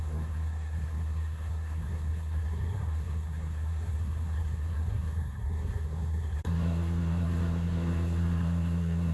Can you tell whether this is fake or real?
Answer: fake